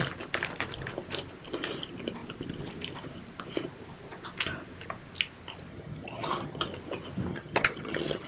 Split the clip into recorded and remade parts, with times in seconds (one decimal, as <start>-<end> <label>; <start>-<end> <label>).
0.0-5.7 recorded; 5.7-6.6 remade; 6.6-7.3 recorded; 7.3-8.3 remade